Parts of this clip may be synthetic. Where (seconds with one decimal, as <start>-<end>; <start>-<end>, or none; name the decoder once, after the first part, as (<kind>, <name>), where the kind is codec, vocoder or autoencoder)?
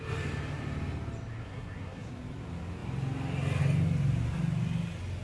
1.4-2.1 (codec, SNAC)